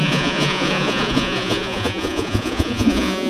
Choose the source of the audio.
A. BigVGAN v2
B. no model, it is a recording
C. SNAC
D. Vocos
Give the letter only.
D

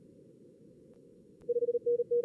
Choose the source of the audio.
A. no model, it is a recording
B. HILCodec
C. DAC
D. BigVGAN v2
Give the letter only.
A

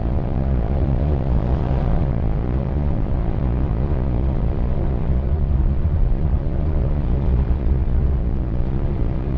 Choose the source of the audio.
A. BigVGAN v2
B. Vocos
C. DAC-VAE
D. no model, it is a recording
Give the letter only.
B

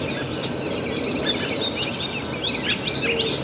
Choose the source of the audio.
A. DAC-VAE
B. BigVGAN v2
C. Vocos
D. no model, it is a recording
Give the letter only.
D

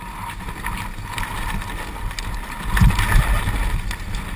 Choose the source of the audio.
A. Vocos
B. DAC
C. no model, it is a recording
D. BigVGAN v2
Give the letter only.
C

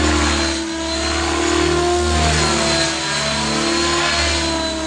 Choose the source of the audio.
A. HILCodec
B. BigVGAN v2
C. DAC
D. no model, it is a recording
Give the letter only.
D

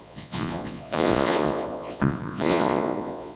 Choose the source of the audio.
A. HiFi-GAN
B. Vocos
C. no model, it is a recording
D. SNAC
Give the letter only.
B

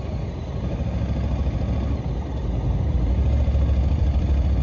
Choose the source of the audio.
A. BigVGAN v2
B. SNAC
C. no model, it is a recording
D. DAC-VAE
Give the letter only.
C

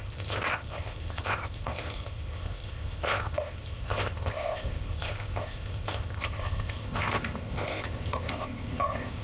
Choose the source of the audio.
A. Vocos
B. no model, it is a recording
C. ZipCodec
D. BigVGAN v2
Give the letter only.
C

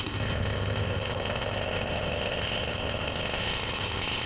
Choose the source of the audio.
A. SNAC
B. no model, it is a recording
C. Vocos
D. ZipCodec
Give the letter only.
D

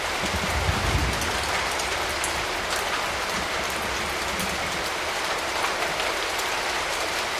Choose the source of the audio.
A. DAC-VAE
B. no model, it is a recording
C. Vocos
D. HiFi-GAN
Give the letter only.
B